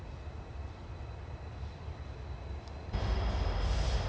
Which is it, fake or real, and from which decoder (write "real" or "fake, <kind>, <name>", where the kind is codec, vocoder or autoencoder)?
real